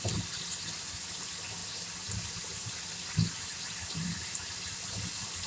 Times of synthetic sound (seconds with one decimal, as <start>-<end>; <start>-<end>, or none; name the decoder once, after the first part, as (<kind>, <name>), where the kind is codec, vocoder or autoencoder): 1.6-2.8 (vocoder, BigVGAN v2); 3.5-4.1